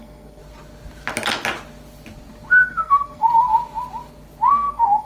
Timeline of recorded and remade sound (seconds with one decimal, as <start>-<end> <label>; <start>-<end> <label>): 0.0-0.4 remade; 0.4-2.5 recorded; 2.5-3.5 remade; 3.5-4.5 recorded; 4.5-5.1 remade